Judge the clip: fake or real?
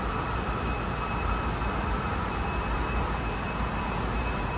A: real